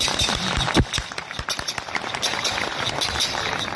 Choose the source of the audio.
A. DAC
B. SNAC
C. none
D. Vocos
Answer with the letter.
C